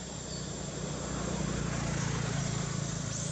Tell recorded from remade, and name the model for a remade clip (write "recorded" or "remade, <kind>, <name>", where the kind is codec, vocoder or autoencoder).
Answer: remade, vocoder, BigVGAN v2